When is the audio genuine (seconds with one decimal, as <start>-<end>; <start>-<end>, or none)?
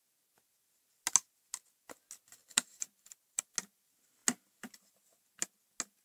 0.0-2.4; 3.5-6.0